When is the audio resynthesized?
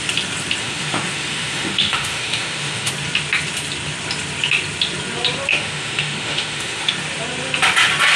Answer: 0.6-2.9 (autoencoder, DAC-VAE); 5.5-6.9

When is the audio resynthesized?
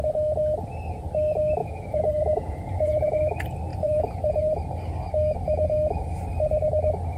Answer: 1.6-3.2 (vocoder, Vocos); 3.7-4.6